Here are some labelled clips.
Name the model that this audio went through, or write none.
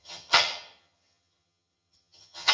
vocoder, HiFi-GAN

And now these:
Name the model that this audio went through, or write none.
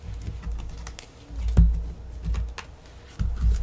none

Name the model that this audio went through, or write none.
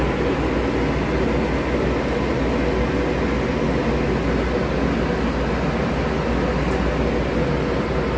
none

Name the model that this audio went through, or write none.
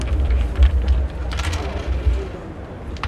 none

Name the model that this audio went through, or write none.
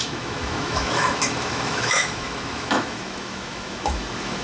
autoencoder, DAC-VAE